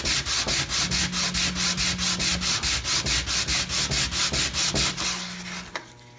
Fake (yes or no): no